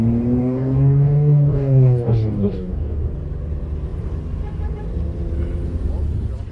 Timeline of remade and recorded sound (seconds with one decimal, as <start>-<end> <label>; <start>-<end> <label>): 0.0-0.4 recorded; 0.4-3.0 remade; 3.0-6.5 recorded

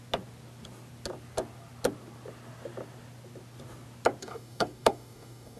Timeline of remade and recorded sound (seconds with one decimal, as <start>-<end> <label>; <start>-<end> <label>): 0.0-4.2 recorded; 4.2-5.6 remade

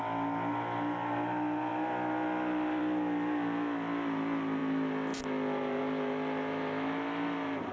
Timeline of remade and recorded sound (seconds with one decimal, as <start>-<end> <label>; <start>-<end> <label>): 0.0-7.7 recorded

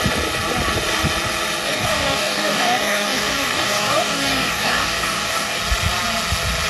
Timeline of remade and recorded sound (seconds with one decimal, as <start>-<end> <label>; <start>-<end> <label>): 0.0-1.6 recorded; 1.6-5.6 remade; 5.6-6.7 recorded

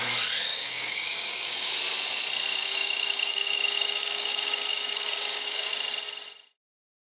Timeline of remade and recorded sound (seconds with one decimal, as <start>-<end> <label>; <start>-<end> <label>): 0.0-0.5 recorded; 0.5-1.7 remade; 1.7-2.6 recorded; 2.6-5.7 remade; 5.7-7.2 recorded

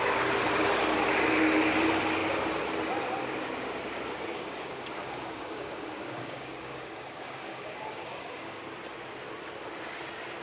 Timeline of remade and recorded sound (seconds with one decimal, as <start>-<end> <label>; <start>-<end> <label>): 0.0-4.3 recorded; 4.3-8.6 remade; 8.6-10.4 recorded

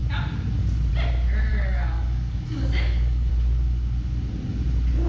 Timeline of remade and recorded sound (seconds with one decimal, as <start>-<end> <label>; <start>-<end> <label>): 0.0-1.5 recorded; 1.5-3.3 remade; 3.3-5.1 recorded